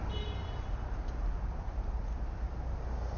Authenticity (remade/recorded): recorded